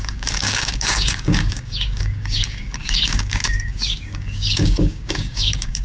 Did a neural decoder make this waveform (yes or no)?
yes